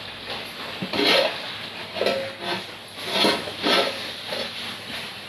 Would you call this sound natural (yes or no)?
yes